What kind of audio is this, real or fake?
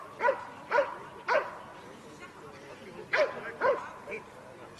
real